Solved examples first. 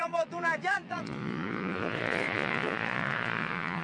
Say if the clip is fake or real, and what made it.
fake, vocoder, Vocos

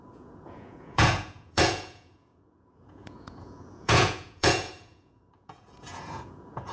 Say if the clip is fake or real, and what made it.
fake, vocoder, Vocos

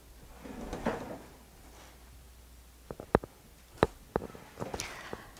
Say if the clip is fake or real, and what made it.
real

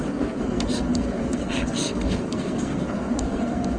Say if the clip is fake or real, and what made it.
fake, codec, SNAC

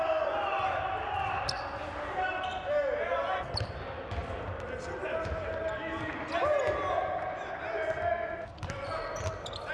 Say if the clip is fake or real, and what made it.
real